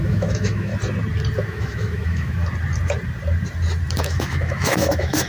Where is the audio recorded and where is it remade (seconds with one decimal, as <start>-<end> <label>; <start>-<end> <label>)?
0.0-0.7 remade; 0.7-1.4 recorded; 1.4-2.4 remade; 2.4-4.0 recorded; 4.0-5.3 remade